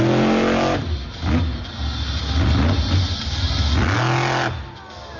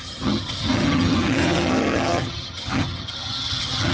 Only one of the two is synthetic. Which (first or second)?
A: second